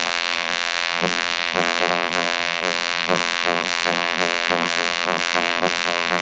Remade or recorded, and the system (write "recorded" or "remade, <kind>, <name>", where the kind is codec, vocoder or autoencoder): remade, vocoder, BigVGAN v2